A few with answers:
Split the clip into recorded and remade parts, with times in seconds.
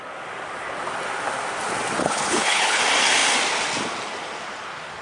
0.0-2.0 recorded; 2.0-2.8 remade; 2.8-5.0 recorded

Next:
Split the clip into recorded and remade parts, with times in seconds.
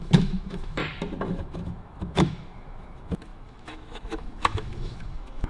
0.0-0.8 remade; 0.8-1.3 recorded; 1.3-5.5 remade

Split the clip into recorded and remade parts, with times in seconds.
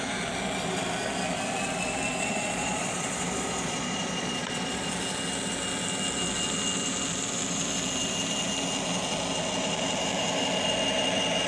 0.0-2.1 recorded; 2.1-4.9 remade; 4.9-11.5 recorded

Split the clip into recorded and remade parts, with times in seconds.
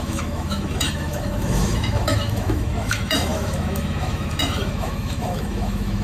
0.0-6.0 remade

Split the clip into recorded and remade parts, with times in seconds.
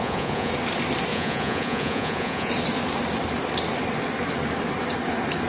0.0-0.5 remade; 0.5-1.1 recorded; 1.1-2.5 remade; 2.5-5.5 recorded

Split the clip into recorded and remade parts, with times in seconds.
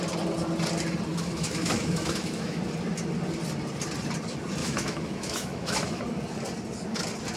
0.0-1.1 recorded; 1.1-2.6 remade; 2.6-4.6 recorded; 4.6-6.0 remade; 6.0-7.4 recorded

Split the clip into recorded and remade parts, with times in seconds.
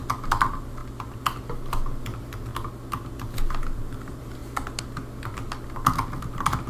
0.0-0.8 remade; 0.8-2.0 recorded; 2.0-2.5 remade; 2.5-3.6 recorded; 3.6-4.4 remade; 4.4-6.7 recorded